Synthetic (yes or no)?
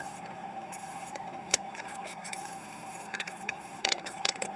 yes